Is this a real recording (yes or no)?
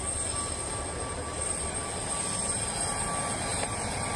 yes